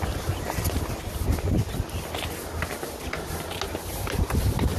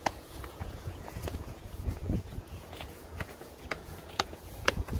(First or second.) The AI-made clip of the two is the second